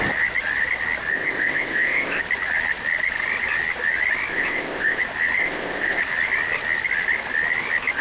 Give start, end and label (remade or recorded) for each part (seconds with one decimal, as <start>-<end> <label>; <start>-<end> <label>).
0.0-1.1 recorded; 1.1-2.2 remade; 2.2-4.3 recorded; 4.3-5.0 remade; 5.0-5.4 recorded; 5.4-6.0 remade; 6.0-8.0 recorded